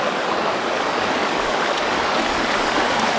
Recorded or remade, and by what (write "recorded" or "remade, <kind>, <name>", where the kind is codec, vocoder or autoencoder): remade, codec, DAC